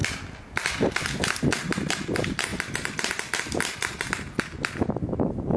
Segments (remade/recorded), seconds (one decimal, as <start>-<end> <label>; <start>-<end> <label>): 0.0-5.6 recorded